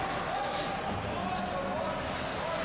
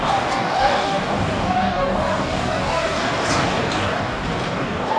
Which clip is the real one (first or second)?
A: first